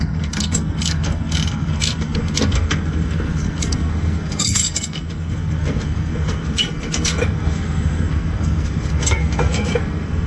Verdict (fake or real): fake